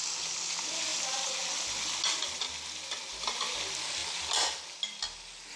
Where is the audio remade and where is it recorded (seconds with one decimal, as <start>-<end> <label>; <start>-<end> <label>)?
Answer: 0.0-0.9 recorded; 0.9-1.9 remade; 1.9-5.6 recorded